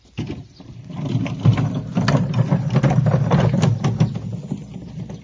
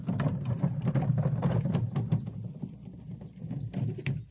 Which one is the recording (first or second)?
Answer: first